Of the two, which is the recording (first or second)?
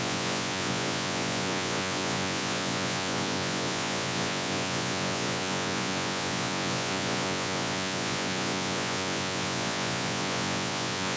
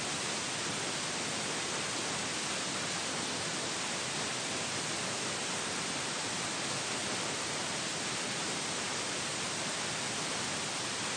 second